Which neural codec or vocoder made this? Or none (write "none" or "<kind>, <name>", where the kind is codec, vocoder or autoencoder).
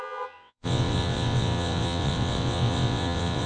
vocoder, WaveNeXt